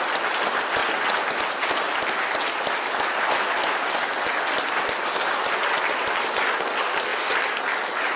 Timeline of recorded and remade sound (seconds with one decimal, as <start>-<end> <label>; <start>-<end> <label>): 0.0-8.2 recorded